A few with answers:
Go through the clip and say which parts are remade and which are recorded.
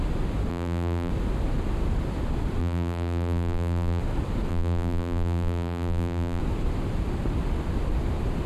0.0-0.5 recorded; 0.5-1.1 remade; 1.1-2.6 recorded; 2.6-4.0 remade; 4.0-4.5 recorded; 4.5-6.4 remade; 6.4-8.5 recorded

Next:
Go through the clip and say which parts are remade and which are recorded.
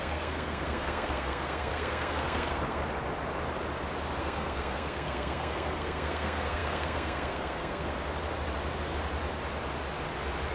0.0-2.8 remade; 2.8-4.2 recorded; 4.2-7.9 remade; 7.9-10.5 recorded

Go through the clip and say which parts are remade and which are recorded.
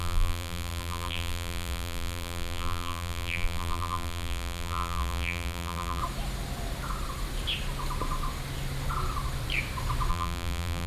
0.0-6.0 remade; 6.0-10.1 recorded; 10.1-10.9 remade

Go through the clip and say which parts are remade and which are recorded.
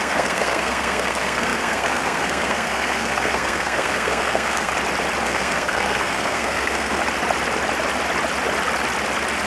0.0-4.7 remade; 4.7-5.2 recorded; 5.2-7.0 remade; 7.0-9.5 recorded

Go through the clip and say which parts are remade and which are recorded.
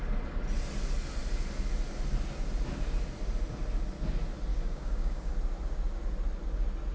0.0-4.5 recorded; 4.5-5.3 remade; 5.3-6.9 recorded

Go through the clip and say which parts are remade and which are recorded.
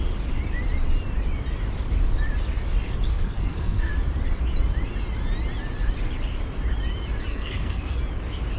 0.0-3.1 recorded; 3.1-3.9 remade; 3.9-7.3 recorded; 7.3-8.0 remade; 8.0-8.6 recorded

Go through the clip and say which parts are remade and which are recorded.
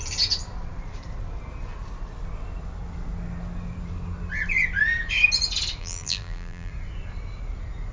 0.0-5.8 recorded; 5.8-6.7 remade; 6.7-7.9 recorded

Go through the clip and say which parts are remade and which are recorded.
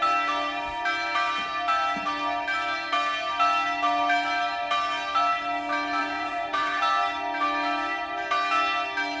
0.0-6.0 recorded; 6.0-6.8 remade; 6.8-9.2 recorded